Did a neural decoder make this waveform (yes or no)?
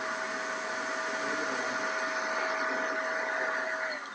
no